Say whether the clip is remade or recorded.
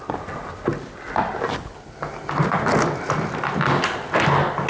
recorded